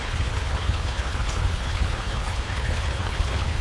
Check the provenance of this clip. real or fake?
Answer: fake